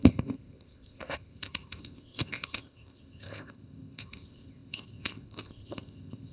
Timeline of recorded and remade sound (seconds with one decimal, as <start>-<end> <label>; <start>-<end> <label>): 0.0-6.3 remade